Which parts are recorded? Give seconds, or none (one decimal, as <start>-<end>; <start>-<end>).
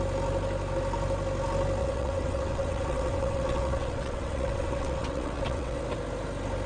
0.0-1.8; 5.8-6.7